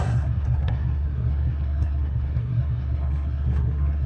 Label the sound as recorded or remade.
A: remade